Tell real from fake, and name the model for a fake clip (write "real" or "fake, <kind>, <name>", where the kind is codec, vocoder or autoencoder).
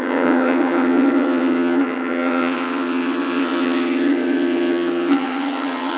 fake, vocoder, HiFi-GAN